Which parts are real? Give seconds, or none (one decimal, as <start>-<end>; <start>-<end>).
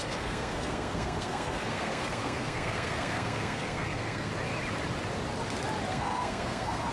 4.3-5.9